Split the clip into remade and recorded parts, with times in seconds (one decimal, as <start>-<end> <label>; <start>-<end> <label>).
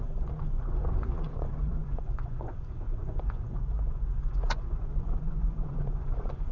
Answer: 0.0-6.5 remade